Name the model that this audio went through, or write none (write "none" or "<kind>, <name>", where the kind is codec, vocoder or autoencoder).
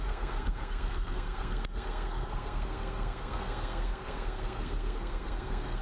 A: codec, SNAC